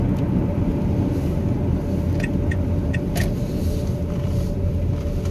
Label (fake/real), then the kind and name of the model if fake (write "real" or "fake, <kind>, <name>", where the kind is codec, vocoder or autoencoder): real